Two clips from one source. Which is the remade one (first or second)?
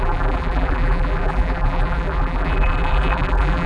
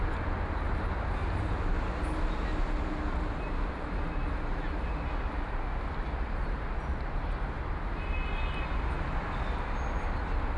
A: first